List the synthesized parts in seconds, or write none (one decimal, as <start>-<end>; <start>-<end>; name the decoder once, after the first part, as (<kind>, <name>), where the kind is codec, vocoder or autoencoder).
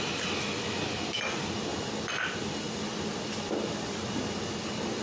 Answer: none